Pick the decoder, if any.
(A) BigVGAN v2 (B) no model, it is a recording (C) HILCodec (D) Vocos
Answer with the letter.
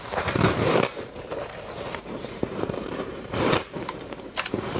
A